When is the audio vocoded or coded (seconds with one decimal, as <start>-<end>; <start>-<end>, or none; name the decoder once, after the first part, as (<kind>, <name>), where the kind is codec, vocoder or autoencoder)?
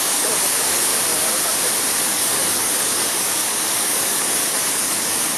0.0-0.9 (codec, DAC); 2.0-5.4